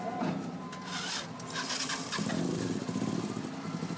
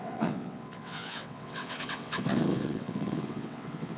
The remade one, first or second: second